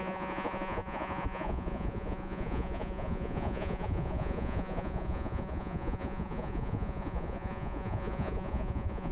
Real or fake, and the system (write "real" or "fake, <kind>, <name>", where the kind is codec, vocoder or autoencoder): fake, vocoder, Vocos